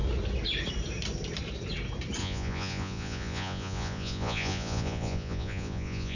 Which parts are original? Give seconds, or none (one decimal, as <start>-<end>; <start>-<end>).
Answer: 0.0-2.2